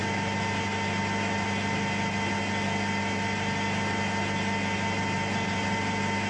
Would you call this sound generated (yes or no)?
no